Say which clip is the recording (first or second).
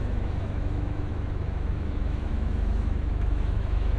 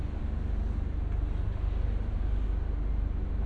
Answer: second